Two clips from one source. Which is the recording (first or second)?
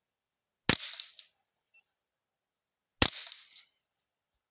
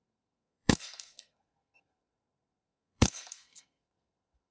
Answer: first